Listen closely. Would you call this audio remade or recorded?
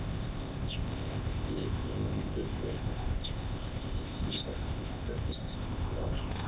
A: remade